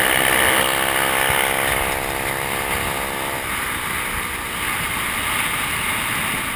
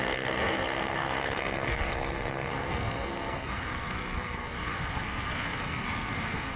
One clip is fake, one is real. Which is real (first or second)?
first